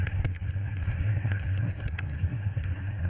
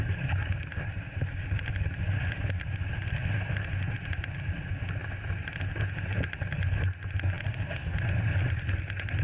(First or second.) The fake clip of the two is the first